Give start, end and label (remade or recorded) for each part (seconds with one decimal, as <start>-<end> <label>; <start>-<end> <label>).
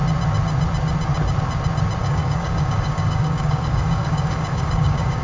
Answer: 0.0-2.0 recorded; 2.0-5.2 remade